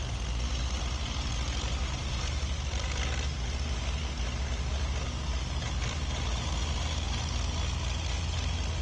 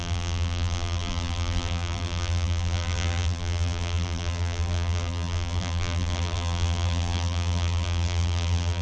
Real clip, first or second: first